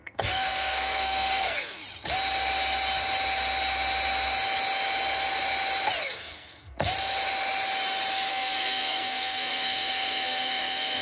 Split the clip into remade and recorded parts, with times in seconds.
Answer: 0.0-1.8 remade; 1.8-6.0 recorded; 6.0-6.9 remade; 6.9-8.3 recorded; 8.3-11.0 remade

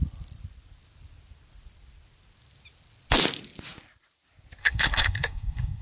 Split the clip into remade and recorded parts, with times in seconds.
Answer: 0.0-4.6 recorded; 4.6-5.8 remade

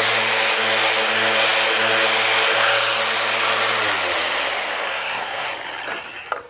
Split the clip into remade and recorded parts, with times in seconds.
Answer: 0.0-4.9 recorded; 4.9-5.5 remade; 5.5-6.5 recorded

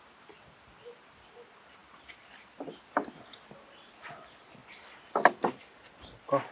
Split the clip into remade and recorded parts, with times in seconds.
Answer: 0.0-6.5 recorded

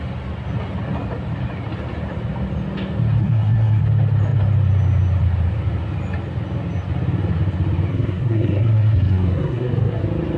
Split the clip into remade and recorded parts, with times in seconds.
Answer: 0.0-3.2 recorded; 3.2-3.8 remade; 3.8-7.9 recorded; 7.9-10.0 remade; 10.0-10.4 recorded